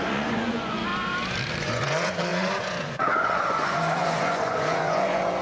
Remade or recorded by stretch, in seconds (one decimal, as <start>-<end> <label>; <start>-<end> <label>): 0.0-0.9 remade; 0.9-1.6 recorded; 1.6-5.4 remade